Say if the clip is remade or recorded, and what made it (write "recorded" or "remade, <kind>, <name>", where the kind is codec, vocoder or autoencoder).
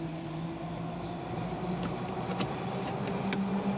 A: recorded